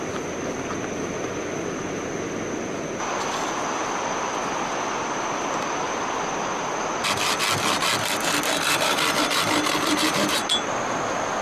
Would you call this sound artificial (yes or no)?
no